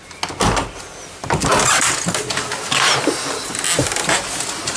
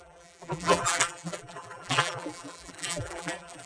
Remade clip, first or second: second